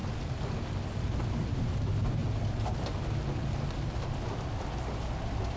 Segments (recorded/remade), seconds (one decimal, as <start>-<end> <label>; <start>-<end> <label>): 0.0-5.6 recorded